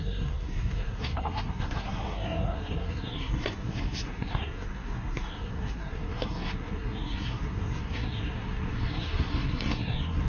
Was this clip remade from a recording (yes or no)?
yes